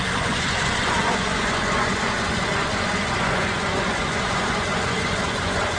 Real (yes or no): no